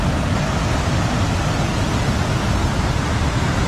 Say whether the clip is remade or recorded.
recorded